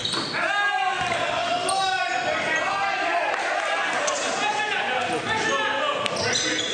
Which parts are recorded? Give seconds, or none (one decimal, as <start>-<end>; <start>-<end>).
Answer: 0.0-1.8; 4.1-6.7